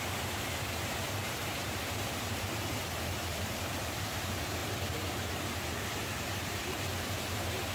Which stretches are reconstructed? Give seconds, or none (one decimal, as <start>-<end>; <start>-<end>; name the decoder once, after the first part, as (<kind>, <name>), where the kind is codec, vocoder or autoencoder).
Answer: 0.0-7.7 (vocoder, BigVGAN v2)